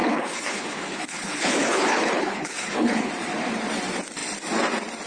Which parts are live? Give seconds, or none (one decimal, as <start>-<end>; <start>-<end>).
3.1-5.1